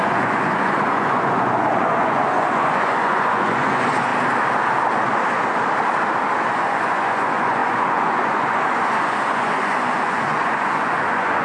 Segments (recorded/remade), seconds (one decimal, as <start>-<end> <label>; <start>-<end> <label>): 0.0-4.1 remade; 4.1-6.5 recorded; 6.5-11.4 remade